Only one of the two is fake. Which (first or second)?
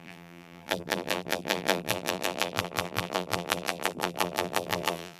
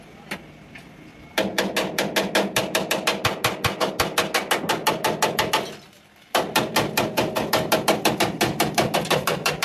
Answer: first